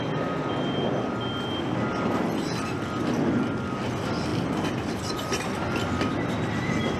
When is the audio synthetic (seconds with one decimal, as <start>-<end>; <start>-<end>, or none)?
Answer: none